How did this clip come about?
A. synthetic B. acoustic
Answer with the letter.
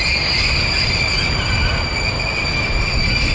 B